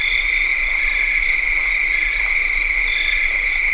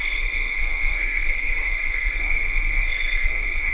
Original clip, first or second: first